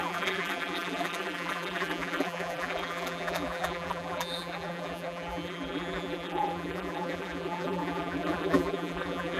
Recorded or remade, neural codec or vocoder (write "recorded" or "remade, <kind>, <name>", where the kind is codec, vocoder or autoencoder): remade, vocoder, BigVGAN v2